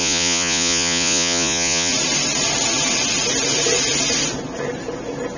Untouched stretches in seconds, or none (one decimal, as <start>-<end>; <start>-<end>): 1.9-5.4